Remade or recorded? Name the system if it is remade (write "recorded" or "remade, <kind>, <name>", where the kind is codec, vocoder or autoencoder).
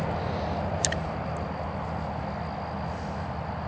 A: recorded